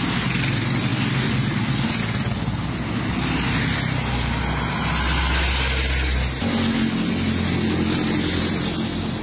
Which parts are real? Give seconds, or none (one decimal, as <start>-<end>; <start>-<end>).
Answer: 0.0-9.2